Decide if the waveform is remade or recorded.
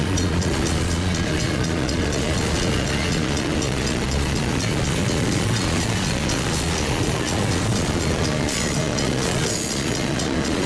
remade